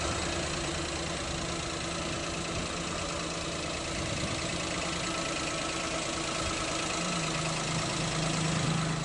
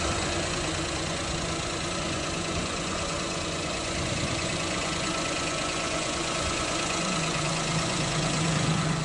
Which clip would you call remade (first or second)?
second